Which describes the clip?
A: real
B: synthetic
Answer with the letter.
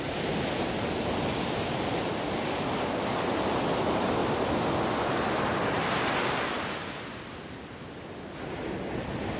A